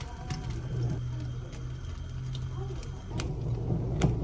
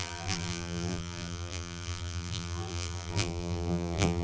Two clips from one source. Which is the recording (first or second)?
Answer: first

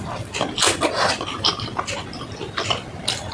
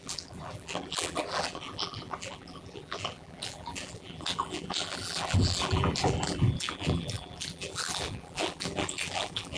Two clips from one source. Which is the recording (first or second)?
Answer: first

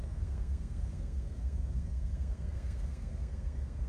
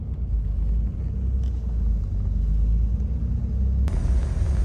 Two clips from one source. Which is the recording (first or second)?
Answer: second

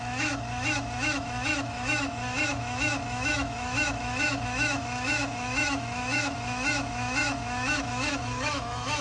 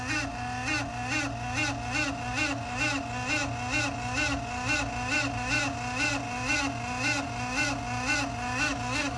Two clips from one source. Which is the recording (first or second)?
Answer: second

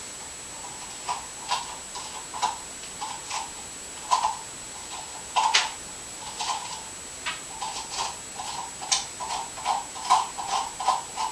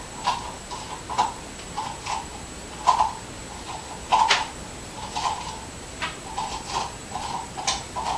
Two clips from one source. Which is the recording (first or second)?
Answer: first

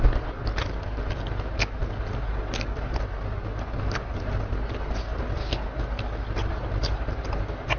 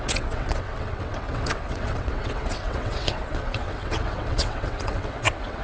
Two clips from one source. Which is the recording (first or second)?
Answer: first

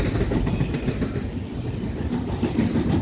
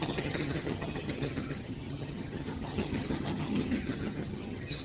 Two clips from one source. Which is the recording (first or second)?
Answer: first